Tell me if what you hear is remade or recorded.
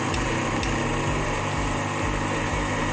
recorded